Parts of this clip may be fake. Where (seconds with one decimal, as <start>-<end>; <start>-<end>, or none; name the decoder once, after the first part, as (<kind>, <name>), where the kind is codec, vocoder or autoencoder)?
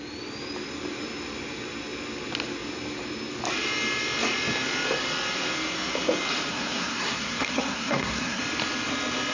6.5-8.4 (codec, SNAC)